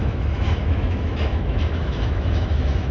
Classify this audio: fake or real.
fake